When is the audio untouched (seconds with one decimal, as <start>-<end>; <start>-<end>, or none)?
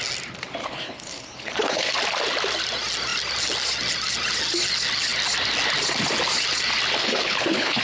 0.0-0.6; 1.9-7.0